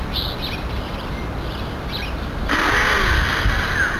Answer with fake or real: real